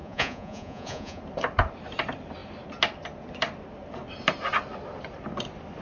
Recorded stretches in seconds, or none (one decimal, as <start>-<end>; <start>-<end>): 1.2-5.8